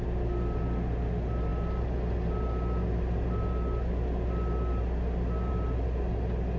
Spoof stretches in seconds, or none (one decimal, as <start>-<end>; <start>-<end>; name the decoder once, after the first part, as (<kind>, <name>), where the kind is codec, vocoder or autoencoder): none